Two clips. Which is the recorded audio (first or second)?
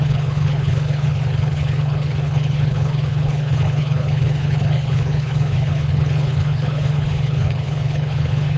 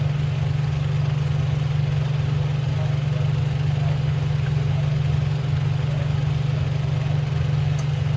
second